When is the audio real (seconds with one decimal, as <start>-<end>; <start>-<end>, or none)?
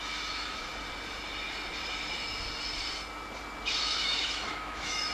0.7-3.8